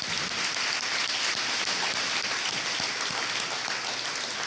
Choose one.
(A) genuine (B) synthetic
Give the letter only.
A